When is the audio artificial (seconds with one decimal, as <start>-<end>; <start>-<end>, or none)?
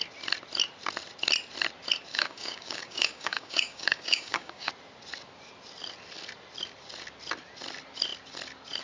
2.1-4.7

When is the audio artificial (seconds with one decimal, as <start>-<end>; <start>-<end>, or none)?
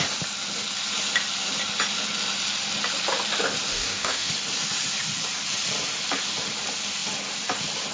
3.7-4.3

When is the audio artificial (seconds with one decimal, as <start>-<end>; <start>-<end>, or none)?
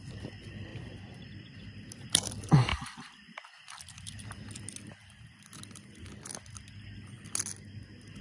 0.7-1.3; 5.0-6.1